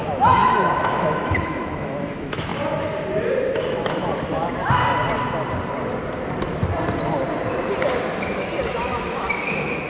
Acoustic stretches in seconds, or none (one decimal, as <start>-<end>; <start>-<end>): 2.5-3.5; 4.1-8.7